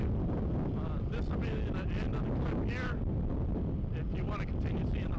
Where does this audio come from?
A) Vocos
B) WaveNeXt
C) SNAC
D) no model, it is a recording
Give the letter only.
D